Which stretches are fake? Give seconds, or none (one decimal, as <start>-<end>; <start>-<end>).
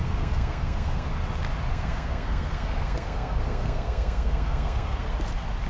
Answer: 0.0-1.1; 1.7-5.1